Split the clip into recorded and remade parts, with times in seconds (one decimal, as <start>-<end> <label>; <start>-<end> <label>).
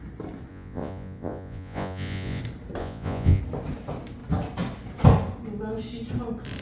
0.0-0.5 recorded; 0.5-2.4 remade; 2.4-2.8 recorded; 2.8-3.4 remade; 3.4-6.6 recorded